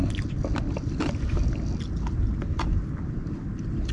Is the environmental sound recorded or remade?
recorded